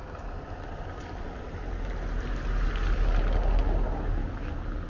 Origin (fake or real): real